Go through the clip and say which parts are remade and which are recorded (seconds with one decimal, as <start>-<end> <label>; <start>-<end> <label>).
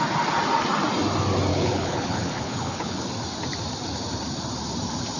0.0-1.5 recorded; 1.5-3.1 remade; 3.1-5.2 recorded